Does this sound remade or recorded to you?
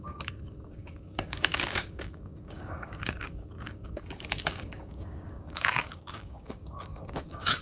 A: remade